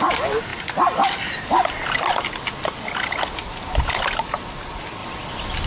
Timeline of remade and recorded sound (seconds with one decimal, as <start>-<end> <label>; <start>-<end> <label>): 0.0-5.7 recorded